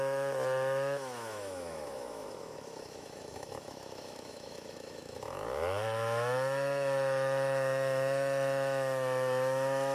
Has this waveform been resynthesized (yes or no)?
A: yes